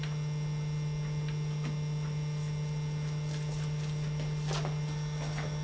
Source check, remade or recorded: recorded